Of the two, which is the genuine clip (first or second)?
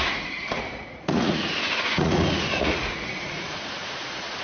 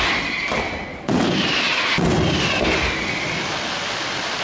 second